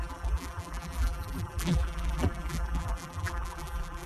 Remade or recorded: remade